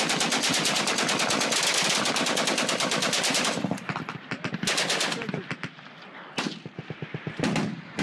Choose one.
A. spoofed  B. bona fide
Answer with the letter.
B